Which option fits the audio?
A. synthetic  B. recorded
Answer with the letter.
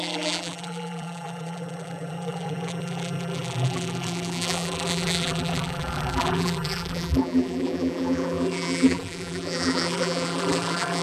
A